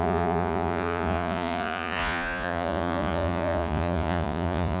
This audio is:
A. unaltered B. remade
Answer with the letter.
B